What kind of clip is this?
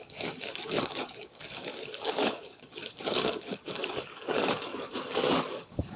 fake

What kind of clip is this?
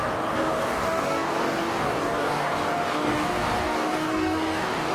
fake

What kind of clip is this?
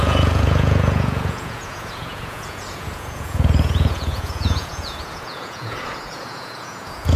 fake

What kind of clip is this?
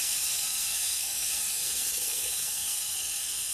fake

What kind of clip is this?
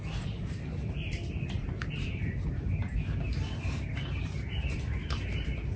real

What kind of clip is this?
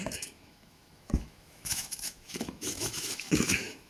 fake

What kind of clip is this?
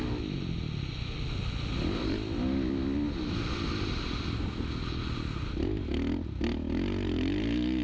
real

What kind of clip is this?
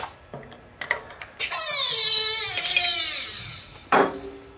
real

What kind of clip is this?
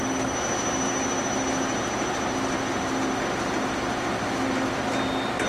real